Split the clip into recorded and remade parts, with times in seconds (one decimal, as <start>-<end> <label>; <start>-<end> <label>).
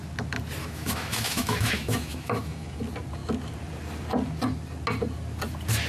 0.0-0.6 recorded; 0.6-2.8 remade; 2.8-5.9 recorded